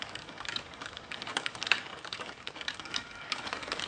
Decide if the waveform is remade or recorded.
remade